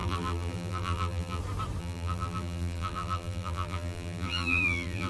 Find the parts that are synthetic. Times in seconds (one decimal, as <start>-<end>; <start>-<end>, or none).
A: 0.0-1.4; 1.8-5.1